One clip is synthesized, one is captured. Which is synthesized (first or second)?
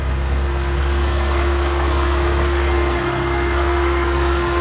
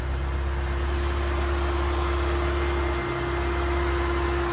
first